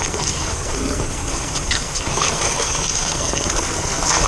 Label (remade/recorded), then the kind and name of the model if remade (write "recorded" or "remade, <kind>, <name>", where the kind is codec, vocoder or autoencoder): remade, codec, SNAC